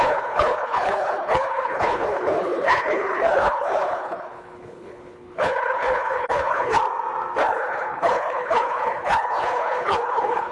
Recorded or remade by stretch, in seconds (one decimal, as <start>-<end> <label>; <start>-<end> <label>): 0.0-6.8 remade; 6.8-7.4 recorded; 7.4-10.5 remade